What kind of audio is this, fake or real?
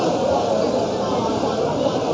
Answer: real